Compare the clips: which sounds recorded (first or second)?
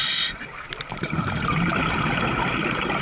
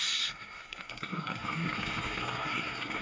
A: first